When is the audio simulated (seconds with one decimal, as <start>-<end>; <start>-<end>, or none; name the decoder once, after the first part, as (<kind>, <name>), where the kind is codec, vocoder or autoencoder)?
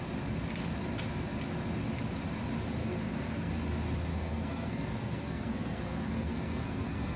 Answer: 2.8-3.5 (codec, SNAC); 4.1-7.2